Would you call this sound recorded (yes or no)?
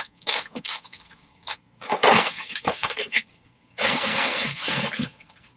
no